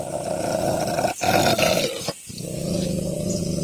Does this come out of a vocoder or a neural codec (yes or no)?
no